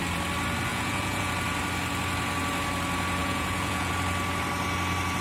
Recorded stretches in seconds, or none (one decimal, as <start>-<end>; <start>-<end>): 0.0-0.7; 1.3-3.2; 3.9-5.2